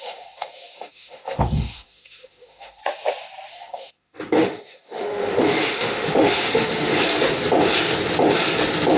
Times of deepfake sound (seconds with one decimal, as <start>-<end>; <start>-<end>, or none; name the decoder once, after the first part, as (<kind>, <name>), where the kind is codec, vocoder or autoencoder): 0.0-2.8 (autoencoder, DAC-VAE); 3.5-6.9